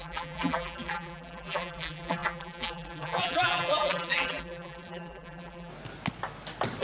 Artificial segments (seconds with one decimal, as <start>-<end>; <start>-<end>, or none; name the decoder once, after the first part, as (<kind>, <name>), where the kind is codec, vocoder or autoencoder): 0.0-5.7 (vocoder, BigVGAN v2)